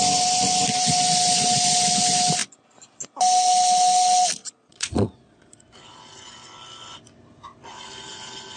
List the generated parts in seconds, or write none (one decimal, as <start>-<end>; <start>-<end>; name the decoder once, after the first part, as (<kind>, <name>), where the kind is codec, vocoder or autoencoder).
4.4-5.6 (vocoder, Vocos)